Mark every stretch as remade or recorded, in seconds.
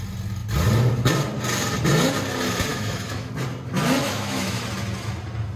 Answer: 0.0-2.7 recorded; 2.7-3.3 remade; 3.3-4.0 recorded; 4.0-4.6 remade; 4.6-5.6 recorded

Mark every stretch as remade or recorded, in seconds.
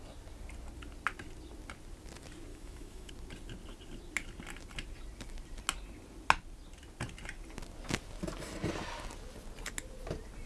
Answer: 0.0-2.5 recorded; 2.5-3.1 remade; 3.1-10.5 recorded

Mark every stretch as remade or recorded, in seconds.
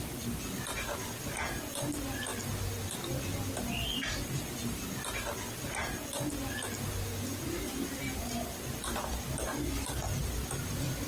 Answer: 0.0-11.1 recorded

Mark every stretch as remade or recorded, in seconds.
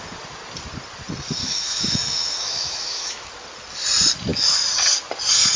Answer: 0.0-1.4 recorded; 1.4-3.3 remade; 3.3-5.6 recorded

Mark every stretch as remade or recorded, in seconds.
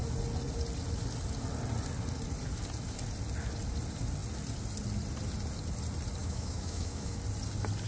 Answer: 0.0-6.2 recorded; 6.2-7.2 remade; 7.2-7.9 recorded